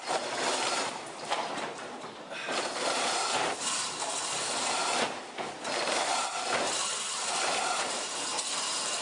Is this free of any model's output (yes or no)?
no